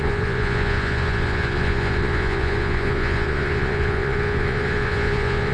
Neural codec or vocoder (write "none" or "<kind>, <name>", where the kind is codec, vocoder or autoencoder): vocoder, Vocos